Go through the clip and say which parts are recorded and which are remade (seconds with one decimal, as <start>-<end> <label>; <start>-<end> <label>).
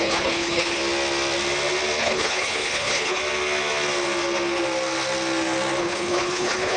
0.0-0.8 remade; 0.8-2.0 recorded; 2.0-3.2 remade; 3.2-5.8 recorded; 5.8-6.8 remade